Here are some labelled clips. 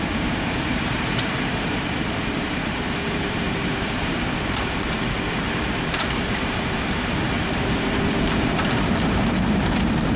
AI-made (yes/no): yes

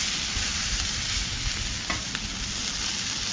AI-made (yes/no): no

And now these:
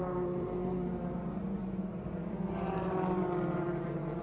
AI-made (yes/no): yes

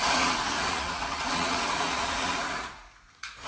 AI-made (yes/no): yes